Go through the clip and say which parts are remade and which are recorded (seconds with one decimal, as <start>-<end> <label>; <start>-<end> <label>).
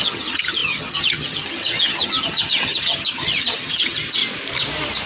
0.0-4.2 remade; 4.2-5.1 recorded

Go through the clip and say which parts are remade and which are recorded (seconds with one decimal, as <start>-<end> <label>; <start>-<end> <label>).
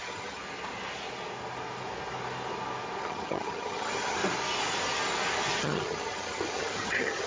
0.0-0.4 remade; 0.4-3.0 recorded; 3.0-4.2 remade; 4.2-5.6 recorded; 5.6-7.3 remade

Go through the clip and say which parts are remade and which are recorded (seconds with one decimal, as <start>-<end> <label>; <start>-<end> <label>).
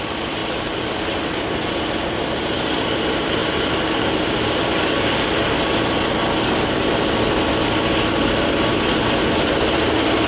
0.0-10.3 recorded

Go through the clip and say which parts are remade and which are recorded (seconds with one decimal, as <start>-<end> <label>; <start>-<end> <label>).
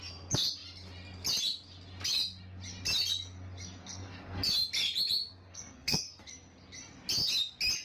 0.0-3.8 recorded; 3.8-4.4 remade; 4.4-5.3 recorded; 5.3-6.3 remade; 6.3-7.8 recorded